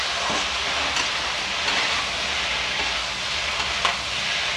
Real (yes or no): yes